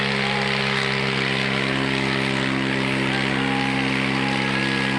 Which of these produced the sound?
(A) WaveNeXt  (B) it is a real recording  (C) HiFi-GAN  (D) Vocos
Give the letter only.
B